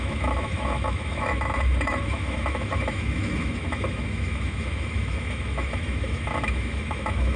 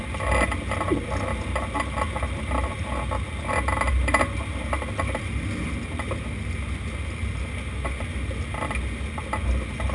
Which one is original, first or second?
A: second